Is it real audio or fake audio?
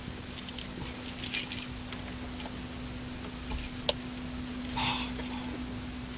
real